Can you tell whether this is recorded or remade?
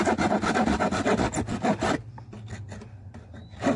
recorded